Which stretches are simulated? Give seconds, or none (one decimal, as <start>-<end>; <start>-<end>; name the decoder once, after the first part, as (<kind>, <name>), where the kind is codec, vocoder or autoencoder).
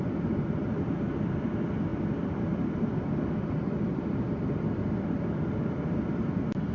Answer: none